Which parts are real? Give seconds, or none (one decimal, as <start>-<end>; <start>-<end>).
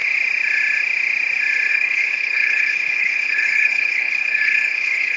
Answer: 0.0-1.7